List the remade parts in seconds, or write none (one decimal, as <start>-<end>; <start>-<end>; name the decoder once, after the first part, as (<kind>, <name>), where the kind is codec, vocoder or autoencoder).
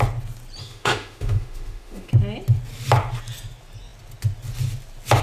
0.6-2.1 (autoencoder, DAC-VAE)